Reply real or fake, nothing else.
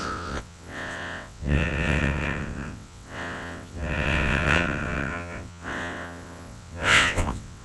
fake